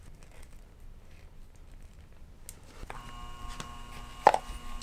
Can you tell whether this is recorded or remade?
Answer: recorded